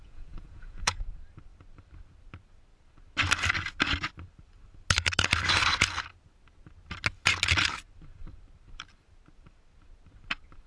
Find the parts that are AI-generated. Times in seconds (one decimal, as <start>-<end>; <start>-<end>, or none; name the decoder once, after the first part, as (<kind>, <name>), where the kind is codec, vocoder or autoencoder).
0.0-1.0 (vocoder, Vocos)

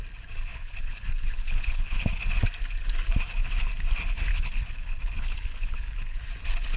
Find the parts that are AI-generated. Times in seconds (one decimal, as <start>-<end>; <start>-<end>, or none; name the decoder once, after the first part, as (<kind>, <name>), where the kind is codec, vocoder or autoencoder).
0.5-2.1 (codec, HILCodec); 4.3-6.2

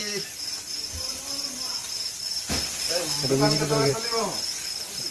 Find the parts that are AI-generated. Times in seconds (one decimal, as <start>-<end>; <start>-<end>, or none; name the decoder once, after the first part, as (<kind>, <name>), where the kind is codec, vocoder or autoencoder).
none

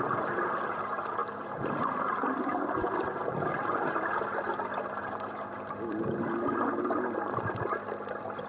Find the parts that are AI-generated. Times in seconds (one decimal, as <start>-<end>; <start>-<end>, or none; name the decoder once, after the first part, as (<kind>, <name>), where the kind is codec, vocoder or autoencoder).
0.0-1.2 (vocoder, BigVGAN v2); 3.9-8.5

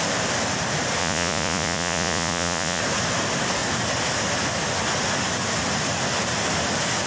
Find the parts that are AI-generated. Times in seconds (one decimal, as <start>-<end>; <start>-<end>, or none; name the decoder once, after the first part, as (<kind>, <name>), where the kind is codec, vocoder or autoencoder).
1.0-2.8 (vocoder, Vocos)